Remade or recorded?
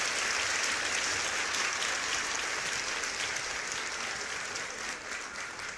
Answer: recorded